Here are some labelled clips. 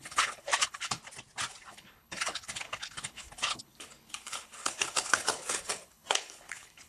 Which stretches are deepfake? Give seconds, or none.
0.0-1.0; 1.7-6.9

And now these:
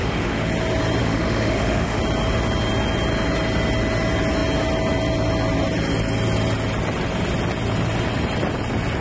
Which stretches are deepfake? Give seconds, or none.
0.0-0.5; 1.0-2.0

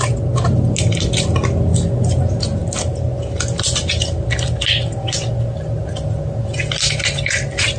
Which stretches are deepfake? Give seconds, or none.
none

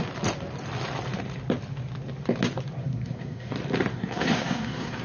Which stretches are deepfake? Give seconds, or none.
2.8-3.5; 3.9-5.0

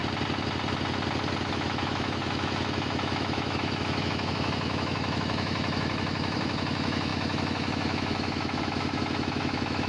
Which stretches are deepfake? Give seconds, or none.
1.5-9.9

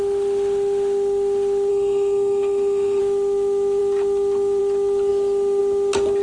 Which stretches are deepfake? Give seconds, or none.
1.7-3.0

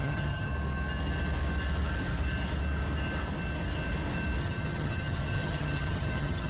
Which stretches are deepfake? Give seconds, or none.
0.0-0.5; 4.4-6.5